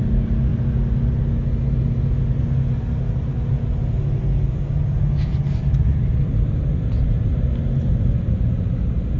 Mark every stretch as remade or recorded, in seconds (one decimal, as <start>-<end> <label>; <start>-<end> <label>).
0.0-9.2 recorded